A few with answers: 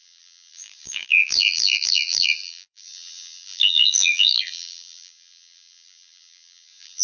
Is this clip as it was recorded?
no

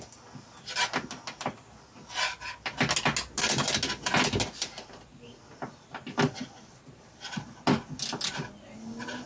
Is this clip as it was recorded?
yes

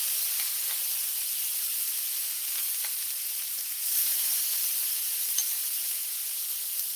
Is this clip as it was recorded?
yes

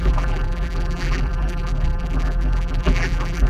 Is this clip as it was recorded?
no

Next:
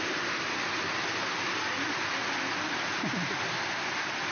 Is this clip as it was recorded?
yes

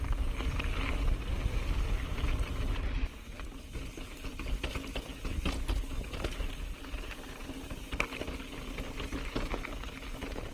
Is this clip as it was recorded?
yes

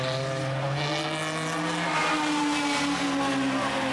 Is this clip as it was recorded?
yes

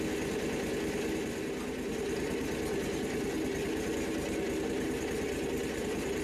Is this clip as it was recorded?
yes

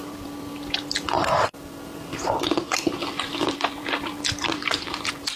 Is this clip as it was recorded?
no